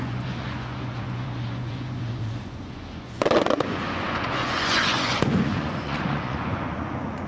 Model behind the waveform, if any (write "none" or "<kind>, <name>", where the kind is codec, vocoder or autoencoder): vocoder, Vocos